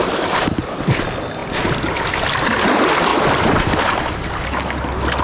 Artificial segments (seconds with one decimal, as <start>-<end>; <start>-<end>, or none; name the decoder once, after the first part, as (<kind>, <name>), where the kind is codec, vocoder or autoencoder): none